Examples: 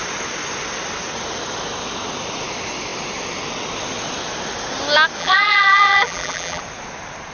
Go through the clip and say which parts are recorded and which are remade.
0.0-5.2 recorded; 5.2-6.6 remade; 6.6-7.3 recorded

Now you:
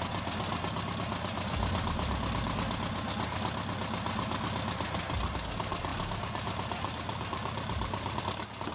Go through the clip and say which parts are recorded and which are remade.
0.0-5.9 recorded; 5.9-8.2 remade; 8.2-8.7 recorded

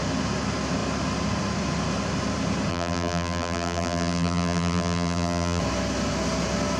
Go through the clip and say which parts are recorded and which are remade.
0.0-2.7 recorded; 2.7-5.6 remade; 5.6-6.8 recorded

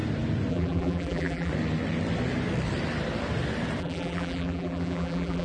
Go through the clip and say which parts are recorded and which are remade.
0.0-0.5 recorded; 0.5-1.5 remade; 1.5-3.8 recorded; 3.8-5.4 remade

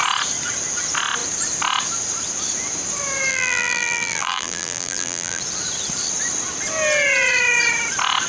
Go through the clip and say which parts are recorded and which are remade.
0.0-3.3 recorded; 3.3-5.4 remade; 5.4-8.3 recorded